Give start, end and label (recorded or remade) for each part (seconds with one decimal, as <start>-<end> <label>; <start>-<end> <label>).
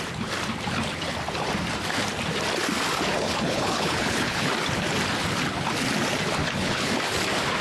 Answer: 0.0-3.1 recorded; 3.1-4.5 remade; 4.5-6.4 recorded; 6.4-6.9 remade; 6.9-7.6 recorded